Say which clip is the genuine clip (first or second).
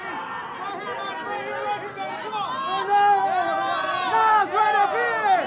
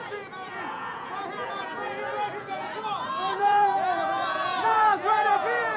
first